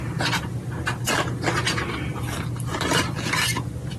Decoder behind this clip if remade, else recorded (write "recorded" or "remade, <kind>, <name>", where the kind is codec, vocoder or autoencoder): recorded